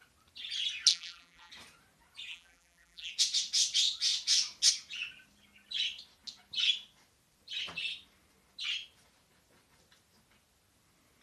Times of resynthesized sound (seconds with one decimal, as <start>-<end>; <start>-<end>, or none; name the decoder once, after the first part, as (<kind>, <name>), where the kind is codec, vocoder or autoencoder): 0.9-1.5 (vocoder, BigVGAN v2); 2.3-3.1